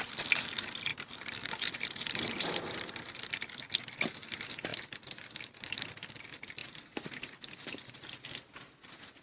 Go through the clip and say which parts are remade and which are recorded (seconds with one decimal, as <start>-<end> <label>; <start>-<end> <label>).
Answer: 0.0-0.9 recorded; 0.9-3.1 remade; 3.1-4.7 recorded; 4.7-6.1 remade; 6.1-6.6 recorded; 6.6-7.9 remade; 7.9-9.2 recorded